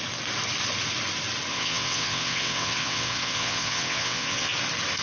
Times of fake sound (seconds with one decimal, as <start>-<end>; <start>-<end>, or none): 1.5-4.5